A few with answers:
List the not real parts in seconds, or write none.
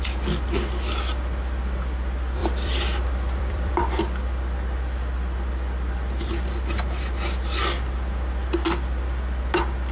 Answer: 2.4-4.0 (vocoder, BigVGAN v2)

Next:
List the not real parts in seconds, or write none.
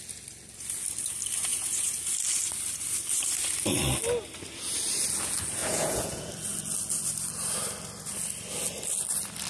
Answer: 1.5-2.0 (vocoder, Vocos); 5.6-6.3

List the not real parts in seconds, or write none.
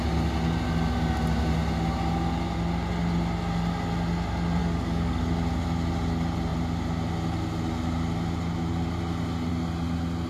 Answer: 4.6-5.2 (codec, DAC)